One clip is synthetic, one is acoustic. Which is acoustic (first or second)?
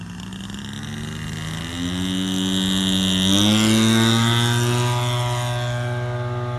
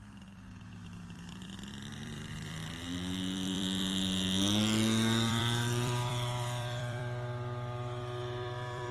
first